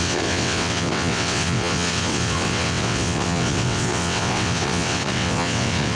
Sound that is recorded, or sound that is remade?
remade